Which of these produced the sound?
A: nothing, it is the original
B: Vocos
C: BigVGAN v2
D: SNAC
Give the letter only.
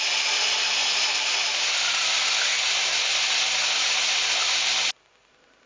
A